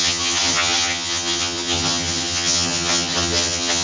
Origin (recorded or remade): remade